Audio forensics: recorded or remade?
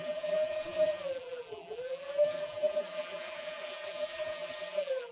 remade